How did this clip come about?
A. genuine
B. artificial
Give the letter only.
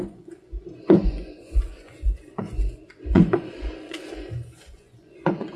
B